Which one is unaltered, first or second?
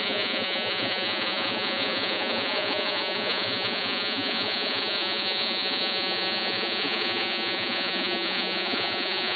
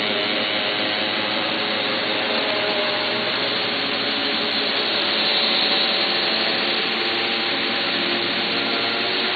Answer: second